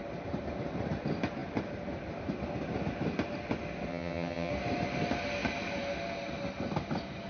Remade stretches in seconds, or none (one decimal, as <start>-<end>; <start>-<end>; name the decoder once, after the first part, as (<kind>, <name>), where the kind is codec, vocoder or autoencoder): 3.9-4.5 (vocoder, HiFi-GAN)